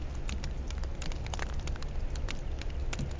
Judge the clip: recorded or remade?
recorded